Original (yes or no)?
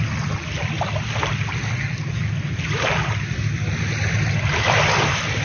yes